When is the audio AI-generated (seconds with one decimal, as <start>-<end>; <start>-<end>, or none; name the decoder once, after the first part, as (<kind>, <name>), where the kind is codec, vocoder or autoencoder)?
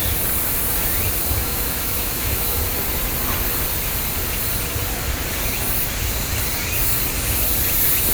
1.4-2.6 (autoencoder, DAC-VAE)